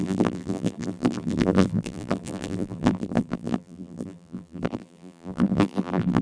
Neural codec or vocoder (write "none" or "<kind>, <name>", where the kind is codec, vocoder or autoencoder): vocoder, BigVGAN v2